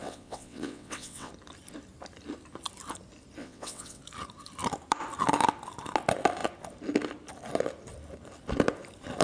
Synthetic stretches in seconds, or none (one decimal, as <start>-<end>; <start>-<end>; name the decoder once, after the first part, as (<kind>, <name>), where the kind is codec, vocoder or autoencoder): 0.0-1.3 (vocoder, WaveNeXt); 3.4-4.0